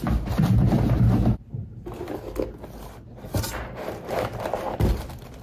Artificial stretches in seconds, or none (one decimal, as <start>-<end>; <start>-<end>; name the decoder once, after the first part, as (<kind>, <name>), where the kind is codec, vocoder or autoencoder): none